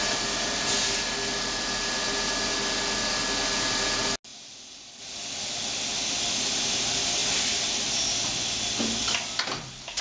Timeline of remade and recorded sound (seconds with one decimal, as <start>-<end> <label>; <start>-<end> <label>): 0.0-10.0 recorded